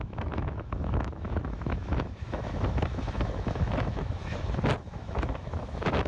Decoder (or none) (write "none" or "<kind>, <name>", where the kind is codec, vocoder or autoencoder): autoencoder, DAC-VAE